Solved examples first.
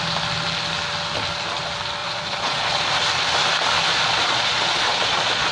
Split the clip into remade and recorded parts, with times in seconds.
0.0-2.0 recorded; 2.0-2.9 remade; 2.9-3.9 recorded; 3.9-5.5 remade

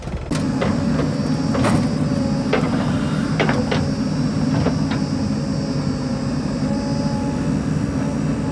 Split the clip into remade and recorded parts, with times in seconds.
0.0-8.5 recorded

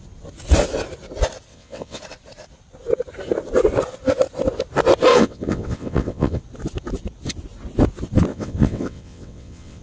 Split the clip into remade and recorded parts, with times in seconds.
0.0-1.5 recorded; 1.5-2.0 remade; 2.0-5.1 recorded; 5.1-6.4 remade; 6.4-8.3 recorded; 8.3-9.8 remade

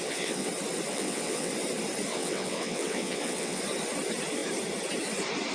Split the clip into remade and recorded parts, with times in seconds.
0.0-0.5 remade; 0.5-0.9 recorded; 0.9-1.5 remade; 1.5-2.1 recorded; 2.1-3.6 remade; 3.6-5.5 recorded

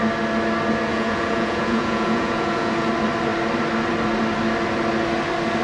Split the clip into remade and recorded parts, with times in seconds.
0.0-0.9 recorded; 0.9-2.9 remade; 2.9-5.6 recorded

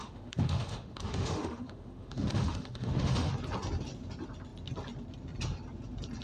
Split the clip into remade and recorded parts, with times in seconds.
0.0-3.3 remade; 3.3-6.2 recorded